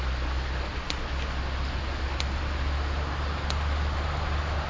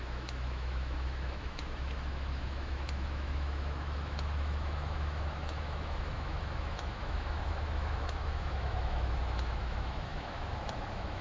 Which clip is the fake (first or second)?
second